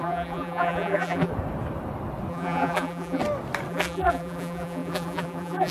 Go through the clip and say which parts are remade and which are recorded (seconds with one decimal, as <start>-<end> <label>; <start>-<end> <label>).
0.0-1.3 remade; 1.3-2.3 recorded; 2.3-3.2 remade; 3.2-3.7 recorded; 3.7-5.7 remade